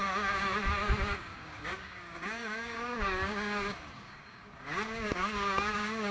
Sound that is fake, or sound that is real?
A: fake